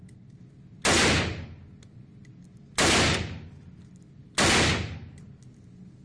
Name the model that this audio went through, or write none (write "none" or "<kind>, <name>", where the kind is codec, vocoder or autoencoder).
none